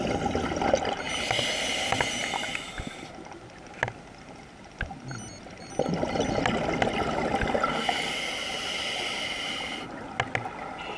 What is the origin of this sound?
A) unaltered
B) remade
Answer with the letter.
A